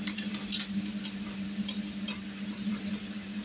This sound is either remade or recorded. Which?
recorded